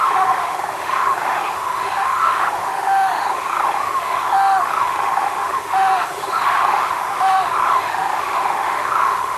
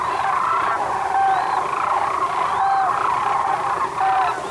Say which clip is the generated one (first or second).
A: first